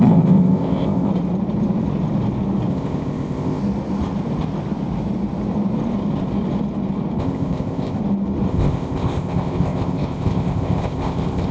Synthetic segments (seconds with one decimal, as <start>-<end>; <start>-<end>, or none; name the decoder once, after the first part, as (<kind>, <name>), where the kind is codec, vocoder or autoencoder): 0.0-1.1 (codec, ZipCodec); 2.7-3.6; 7.2-8.0; 8.5-11.5